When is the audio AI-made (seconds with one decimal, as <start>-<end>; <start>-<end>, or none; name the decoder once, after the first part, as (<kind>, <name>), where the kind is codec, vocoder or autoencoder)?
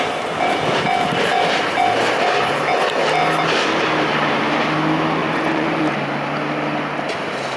5.2-5.8 (vocoder, Vocos)